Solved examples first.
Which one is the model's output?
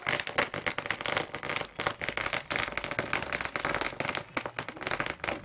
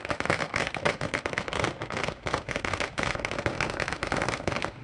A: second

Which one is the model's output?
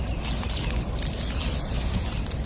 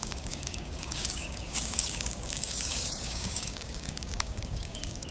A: second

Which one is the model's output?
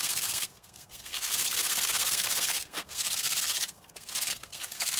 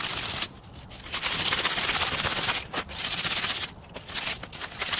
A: first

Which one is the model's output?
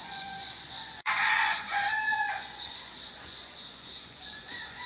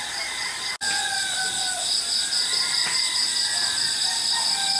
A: first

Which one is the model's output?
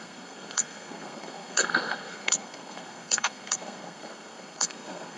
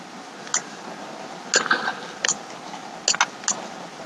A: first